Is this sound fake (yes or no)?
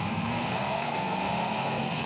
yes